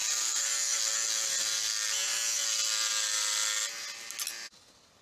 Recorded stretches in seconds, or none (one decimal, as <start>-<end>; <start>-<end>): 0.8-5.0